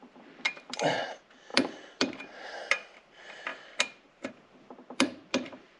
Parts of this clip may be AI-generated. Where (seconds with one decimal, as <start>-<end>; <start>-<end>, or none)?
0.0-5.8